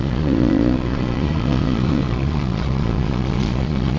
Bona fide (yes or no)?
no